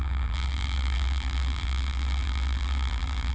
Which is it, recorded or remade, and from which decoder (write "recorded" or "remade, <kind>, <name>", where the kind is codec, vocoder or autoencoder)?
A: remade, vocoder, BigVGAN v2